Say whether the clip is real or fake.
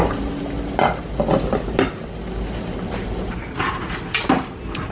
real